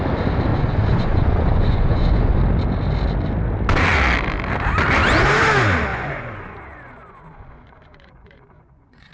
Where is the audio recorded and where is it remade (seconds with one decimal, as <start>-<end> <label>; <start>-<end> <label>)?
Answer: 0.0-0.5 recorded; 0.5-2.4 remade; 2.4-5.9 recorded; 5.9-9.1 remade